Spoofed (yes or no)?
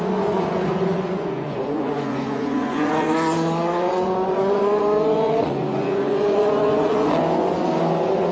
yes